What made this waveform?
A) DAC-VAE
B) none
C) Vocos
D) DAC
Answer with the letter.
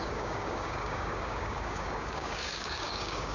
D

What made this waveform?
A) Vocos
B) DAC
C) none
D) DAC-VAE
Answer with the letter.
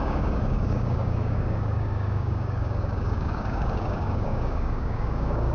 B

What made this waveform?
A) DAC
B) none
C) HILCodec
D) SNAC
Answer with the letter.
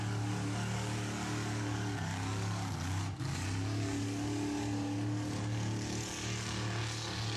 A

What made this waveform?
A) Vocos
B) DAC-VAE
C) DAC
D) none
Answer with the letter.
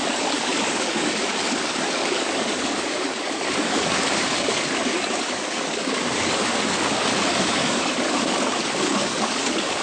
C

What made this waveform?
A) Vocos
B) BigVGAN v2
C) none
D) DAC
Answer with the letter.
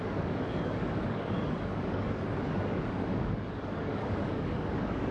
D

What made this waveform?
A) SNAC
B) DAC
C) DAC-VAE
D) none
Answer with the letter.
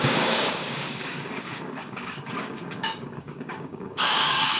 B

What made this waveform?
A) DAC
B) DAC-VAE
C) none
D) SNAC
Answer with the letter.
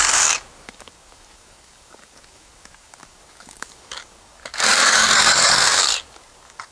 A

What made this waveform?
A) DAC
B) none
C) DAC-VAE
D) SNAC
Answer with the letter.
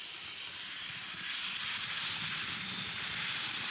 B